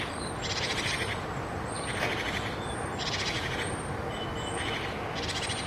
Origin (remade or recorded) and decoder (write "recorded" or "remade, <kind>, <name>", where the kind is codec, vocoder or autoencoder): recorded